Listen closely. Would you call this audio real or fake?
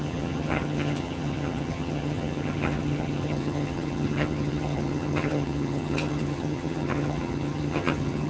fake